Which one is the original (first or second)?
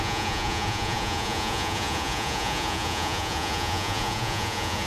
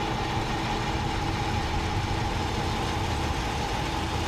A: second